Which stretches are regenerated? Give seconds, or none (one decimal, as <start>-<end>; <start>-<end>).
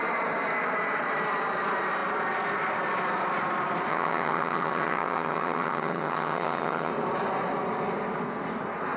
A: 3.9-6.9